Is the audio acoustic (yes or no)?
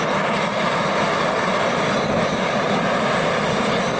no